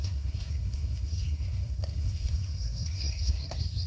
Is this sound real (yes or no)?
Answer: no